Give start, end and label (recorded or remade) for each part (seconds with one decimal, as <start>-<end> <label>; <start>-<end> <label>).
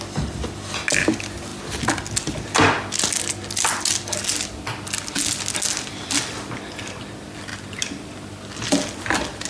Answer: 0.0-9.5 recorded